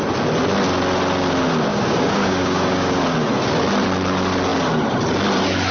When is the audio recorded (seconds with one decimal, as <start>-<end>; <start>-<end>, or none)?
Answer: 0.0-1.7; 3.0-5.7